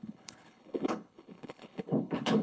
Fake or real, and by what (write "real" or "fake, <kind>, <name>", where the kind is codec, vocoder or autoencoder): fake, codec, HILCodec